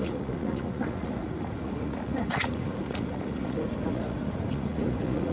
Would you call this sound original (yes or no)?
no